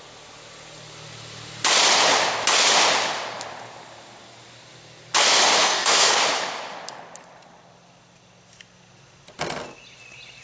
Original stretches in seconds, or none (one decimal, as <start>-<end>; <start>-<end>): 0.0-5.6; 6.2-10.4